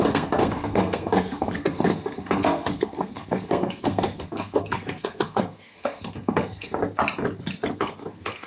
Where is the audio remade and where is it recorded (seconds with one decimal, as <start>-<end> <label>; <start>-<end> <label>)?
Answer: 0.0-6.8 remade; 6.8-7.7 recorded; 7.7-8.5 remade